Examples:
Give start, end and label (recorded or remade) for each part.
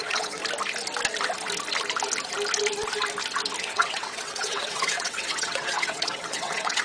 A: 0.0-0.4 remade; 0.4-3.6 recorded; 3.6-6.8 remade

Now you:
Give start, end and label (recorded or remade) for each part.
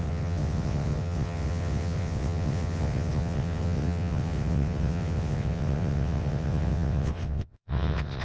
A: 0.0-8.2 remade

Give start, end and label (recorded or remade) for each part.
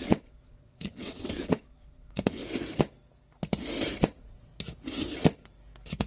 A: 0.0-2.4 remade; 2.4-4.0 recorded; 4.0-4.5 remade; 4.5-6.1 recorded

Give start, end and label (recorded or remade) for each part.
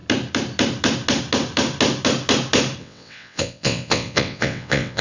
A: 0.0-2.8 recorded; 2.8-5.0 remade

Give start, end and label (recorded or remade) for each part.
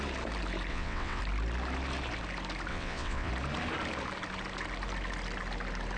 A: 0.0-0.7 recorded; 0.7-1.2 remade; 1.2-2.7 recorded; 2.7-3.3 remade; 3.3-6.0 recorded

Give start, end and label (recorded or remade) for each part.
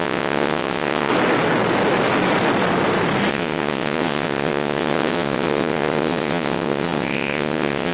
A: 0.0-1.1 remade; 1.1-3.3 recorded; 3.3-7.9 remade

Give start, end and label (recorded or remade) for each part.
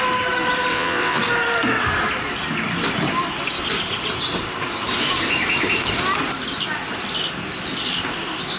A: 0.0-0.7 recorded; 0.7-1.2 remade; 1.2-8.6 recorded